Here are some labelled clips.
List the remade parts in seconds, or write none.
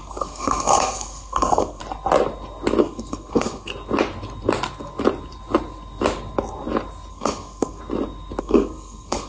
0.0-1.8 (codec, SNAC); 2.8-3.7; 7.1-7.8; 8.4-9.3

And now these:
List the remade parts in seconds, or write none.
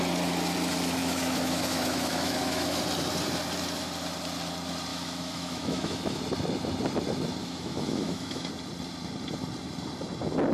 1.0-2.8 (autoencoder, DAC-VAE); 4.9-6.2; 7.4-8.5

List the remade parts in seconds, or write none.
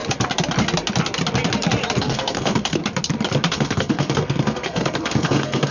2.0-2.8 (codec, SNAC); 3.5-5.7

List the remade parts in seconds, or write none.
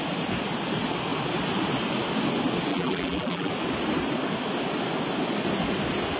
2.7-3.5 (vocoder, BigVGAN v2)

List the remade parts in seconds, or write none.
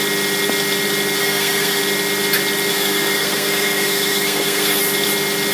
1.2-1.8 (codec, SNAC); 2.7-4.8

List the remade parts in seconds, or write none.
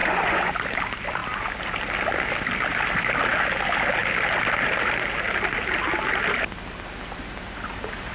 0.0-0.5 (vocoder, Vocos)